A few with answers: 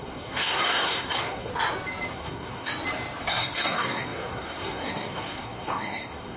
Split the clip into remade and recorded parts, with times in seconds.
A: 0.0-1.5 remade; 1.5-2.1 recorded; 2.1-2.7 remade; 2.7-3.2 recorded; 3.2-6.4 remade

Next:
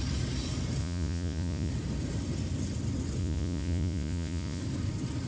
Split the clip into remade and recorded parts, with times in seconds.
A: 0.0-0.8 recorded; 0.8-1.7 remade; 1.7-3.2 recorded; 3.2-4.6 remade; 4.6-5.3 recorded

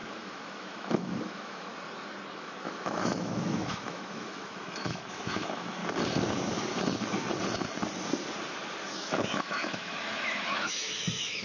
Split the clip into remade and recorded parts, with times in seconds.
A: 0.0-1.7 remade; 1.7-2.3 recorded; 2.3-5.8 remade; 5.8-9.0 recorded; 9.0-11.4 remade